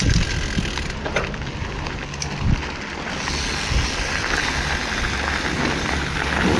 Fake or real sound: real